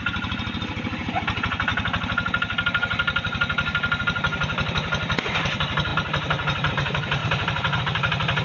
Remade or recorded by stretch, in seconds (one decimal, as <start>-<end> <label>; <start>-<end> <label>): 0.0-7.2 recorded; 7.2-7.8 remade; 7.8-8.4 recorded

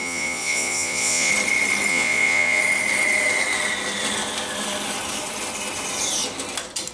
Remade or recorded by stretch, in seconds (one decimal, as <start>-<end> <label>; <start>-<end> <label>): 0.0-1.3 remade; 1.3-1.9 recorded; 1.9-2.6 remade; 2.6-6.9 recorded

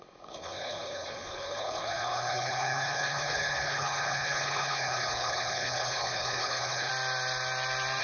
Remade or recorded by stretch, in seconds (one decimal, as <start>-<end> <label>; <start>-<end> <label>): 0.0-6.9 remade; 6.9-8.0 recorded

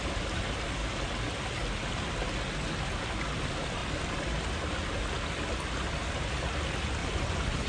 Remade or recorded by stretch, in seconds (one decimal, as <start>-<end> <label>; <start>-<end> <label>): 0.0-7.0 recorded; 7.0-7.7 remade

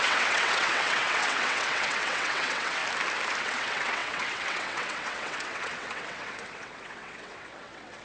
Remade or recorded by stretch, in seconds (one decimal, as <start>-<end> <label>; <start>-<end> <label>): 0.0-2.8 remade; 2.8-3.4 recorded; 3.4-8.0 remade

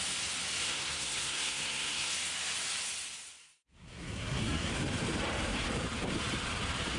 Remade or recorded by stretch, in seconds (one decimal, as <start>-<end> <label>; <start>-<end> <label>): 0.0-0.6 recorded; 0.6-2.1 remade; 2.1-3.4 recorded; 3.4-4.7 remade; 4.7-7.0 recorded

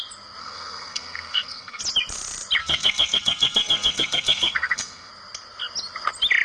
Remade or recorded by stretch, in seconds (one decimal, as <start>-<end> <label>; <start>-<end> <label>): 0.0-0.4 recorded; 0.4-1.8 remade; 1.8-2.6 recorded; 2.6-5.1 remade; 5.1-6.4 recorded

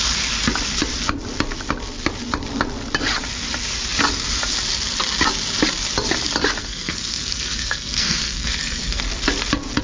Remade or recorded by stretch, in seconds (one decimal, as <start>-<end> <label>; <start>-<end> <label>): 0.0-6.6 recorded; 6.6-9.0 remade; 9.0-9.8 recorded